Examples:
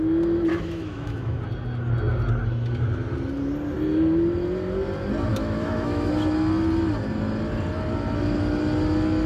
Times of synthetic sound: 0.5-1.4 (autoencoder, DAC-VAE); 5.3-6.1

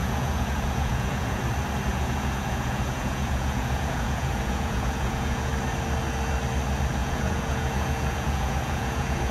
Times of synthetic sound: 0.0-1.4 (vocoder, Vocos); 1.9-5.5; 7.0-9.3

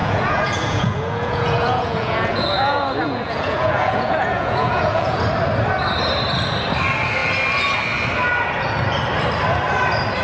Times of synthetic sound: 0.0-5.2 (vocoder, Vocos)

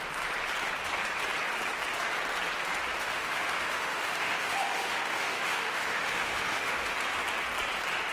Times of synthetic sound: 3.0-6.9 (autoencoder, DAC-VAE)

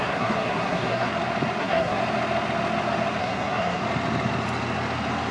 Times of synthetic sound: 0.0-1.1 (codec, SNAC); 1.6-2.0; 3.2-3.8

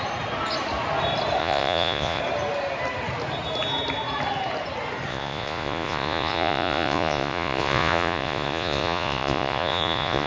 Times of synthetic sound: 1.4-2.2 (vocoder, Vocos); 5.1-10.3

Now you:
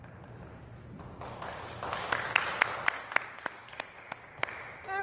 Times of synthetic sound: none